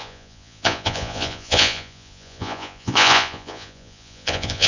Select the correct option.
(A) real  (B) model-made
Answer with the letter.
B